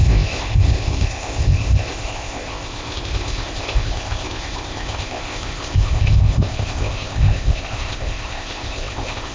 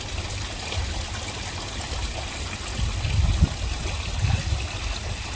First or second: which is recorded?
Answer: second